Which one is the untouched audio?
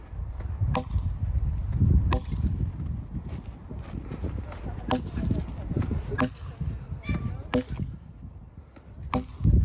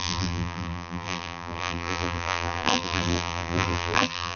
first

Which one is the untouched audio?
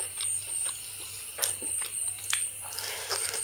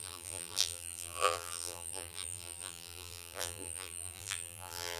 first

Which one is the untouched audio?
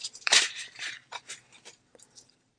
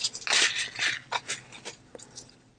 second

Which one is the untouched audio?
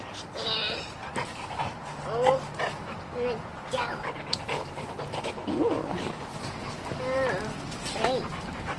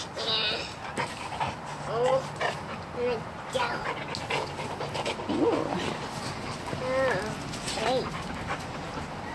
second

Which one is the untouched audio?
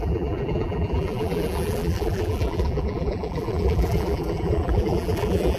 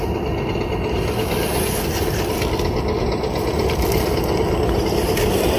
second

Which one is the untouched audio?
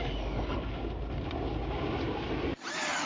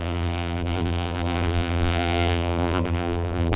first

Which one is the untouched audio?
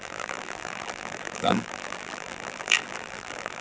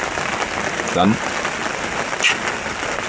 second